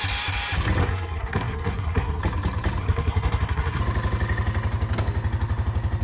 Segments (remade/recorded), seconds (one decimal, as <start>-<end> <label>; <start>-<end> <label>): 0.0-0.8 recorded; 0.8-2.2 remade; 2.2-2.8 recorded; 2.8-3.8 remade; 3.8-6.0 recorded